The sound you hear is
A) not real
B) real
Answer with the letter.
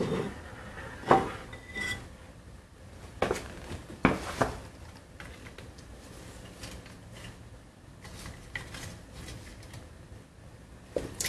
B